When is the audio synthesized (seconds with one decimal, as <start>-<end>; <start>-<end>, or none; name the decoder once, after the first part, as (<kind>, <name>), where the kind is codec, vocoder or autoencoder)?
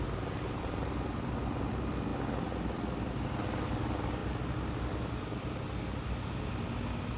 none